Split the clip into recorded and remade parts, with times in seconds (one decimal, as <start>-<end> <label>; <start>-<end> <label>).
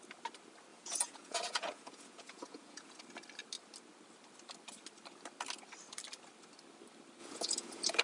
0.0-0.7 recorded; 0.7-3.0 remade; 3.0-7.2 recorded; 7.2-8.0 remade